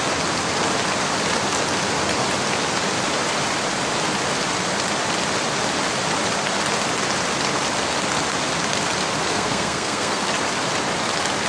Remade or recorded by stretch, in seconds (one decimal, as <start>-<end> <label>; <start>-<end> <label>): 0.0-9.3 recorded; 9.3-10.3 remade; 10.3-11.5 recorded